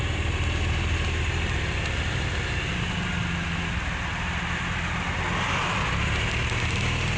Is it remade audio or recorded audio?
recorded